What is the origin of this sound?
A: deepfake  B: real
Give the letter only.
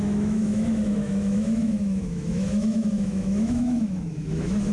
A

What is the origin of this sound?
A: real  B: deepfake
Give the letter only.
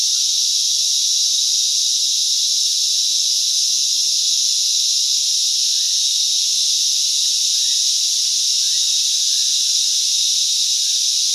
A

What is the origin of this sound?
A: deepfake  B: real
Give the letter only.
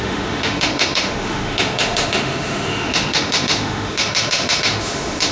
A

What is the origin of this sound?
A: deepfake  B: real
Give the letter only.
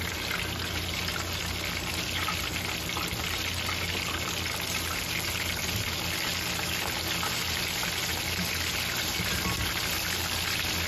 B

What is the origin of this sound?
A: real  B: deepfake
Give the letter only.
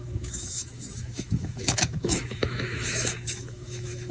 B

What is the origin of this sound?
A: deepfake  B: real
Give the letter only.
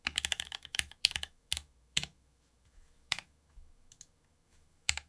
A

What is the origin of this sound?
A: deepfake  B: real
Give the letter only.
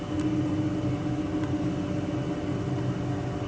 B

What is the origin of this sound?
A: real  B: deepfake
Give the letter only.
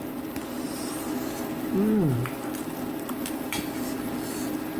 A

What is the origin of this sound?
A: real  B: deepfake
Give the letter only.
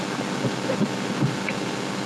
A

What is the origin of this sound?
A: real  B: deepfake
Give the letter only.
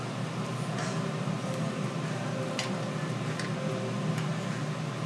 A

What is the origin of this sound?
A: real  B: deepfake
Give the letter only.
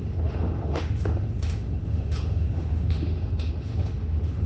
B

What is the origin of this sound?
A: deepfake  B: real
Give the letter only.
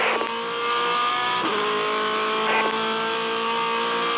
B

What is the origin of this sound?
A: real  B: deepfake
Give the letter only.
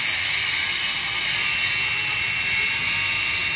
A